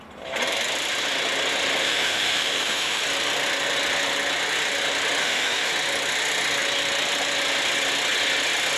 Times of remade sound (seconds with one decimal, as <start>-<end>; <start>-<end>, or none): 1.8-3.0; 5.2-5.7